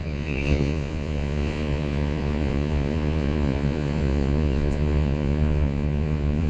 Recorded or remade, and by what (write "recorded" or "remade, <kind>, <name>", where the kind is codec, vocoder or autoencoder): remade, vocoder, Vocos